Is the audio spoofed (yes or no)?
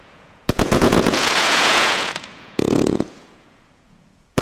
yes